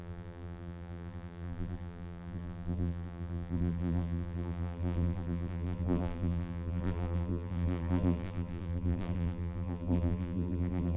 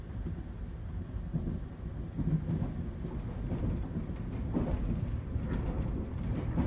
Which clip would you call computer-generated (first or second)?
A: first